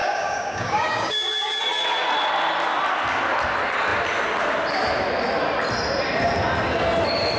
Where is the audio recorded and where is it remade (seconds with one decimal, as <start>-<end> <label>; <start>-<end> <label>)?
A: 0.0-1.6 remade; 1.6-7.4 recorded